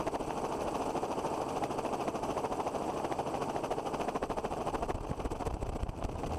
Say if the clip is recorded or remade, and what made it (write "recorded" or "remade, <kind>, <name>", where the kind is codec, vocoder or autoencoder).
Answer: recorded